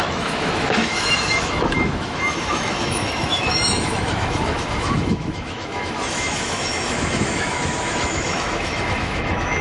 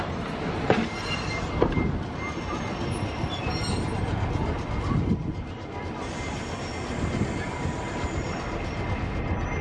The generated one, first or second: first